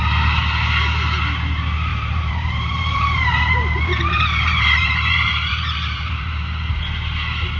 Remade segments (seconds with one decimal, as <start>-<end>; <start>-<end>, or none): 1.9-6.4